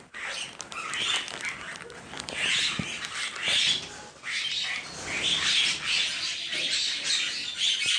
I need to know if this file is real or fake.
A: real